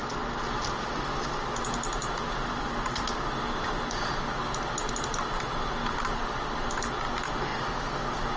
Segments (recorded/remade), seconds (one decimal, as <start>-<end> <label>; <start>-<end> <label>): 0.0-8.4 recorded